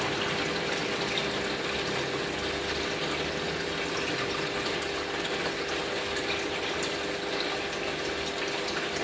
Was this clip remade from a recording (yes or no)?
no